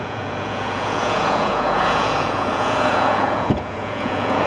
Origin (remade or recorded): remade